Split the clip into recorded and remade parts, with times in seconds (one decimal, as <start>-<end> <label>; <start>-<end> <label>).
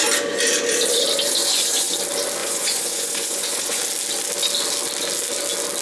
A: 0.0-1.4 recorded; 1.4-1.9 remade; 1.9-2.4 recorded; 2.4-3.8 remade; 3.8-5.8 recorded